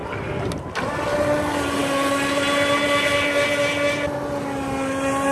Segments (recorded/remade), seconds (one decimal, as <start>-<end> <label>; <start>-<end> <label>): 0.0-1.8 recorded; 1.8-2.7 remade; 2.7-5.3 recorded